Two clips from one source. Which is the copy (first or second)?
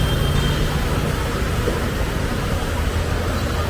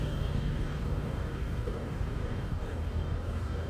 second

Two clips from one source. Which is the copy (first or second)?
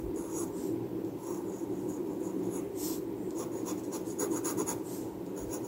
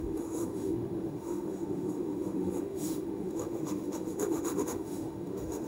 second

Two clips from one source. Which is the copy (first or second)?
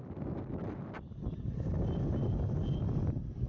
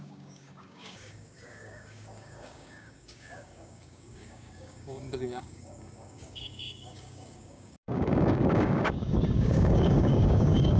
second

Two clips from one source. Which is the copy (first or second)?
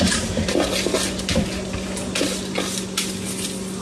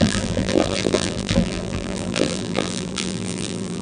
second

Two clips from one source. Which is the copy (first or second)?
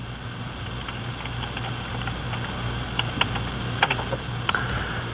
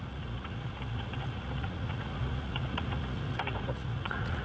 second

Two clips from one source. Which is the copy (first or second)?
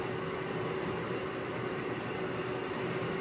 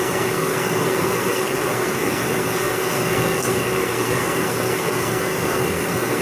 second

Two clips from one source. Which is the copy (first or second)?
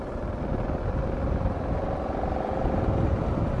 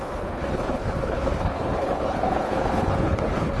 second